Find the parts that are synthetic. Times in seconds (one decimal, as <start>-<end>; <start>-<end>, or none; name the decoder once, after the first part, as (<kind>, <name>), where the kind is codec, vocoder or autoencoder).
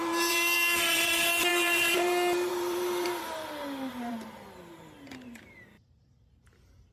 0.0-3.4 (vocoder, BigVGAN v2); 3.9-6.9